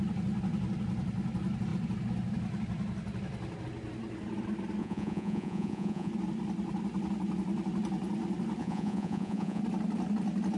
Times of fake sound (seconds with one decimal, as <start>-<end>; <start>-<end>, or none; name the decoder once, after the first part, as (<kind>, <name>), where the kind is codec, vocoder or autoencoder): 4.8-6.1 (vocoder, Vocos); 8.6-9.6